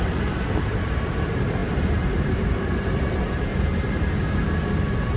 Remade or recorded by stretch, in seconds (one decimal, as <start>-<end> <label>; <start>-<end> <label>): 0.0-3.5 remade; 3.5-5.2 recorded